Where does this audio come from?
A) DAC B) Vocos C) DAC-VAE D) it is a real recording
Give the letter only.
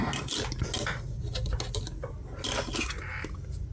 D